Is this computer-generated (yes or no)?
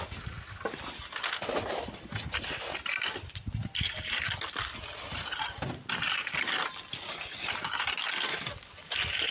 no